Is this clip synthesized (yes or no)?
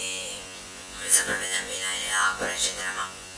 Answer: yes